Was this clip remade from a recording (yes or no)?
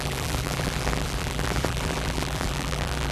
yes